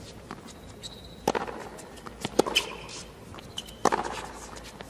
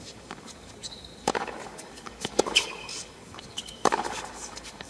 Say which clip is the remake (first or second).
second